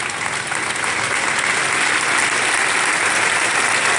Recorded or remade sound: recorded